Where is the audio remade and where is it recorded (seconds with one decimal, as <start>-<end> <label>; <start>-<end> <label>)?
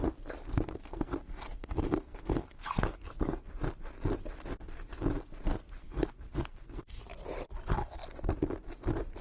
0.0-0.5 recorded; 0.5-3.5 remade; 3.5-5.8 recorded; 5.8-7.0 remade; 7.0-9.2 recorded